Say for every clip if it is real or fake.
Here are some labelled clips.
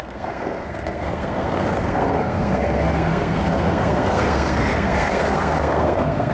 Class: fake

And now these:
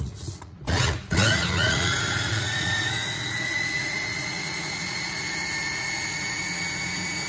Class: fake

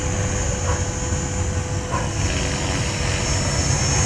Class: real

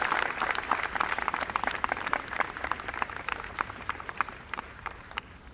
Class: fake